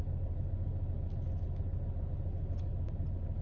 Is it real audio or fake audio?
real